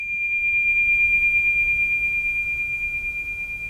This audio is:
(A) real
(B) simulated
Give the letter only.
A